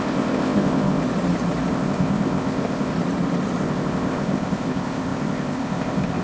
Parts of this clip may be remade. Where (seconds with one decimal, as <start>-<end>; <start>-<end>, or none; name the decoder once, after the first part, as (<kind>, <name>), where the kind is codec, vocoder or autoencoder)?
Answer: 0.0-1.0 (codec, ZipCodec); 1.7-2.9; 3.6-6.2